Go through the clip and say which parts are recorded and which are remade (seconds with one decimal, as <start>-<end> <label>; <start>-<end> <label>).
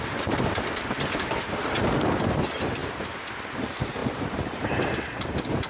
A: 0.0-2.8 remade; 2.8-3.3 recorded; 3.3-5.7 remade